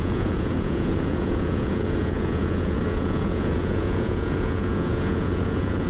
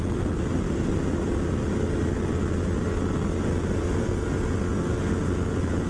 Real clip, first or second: second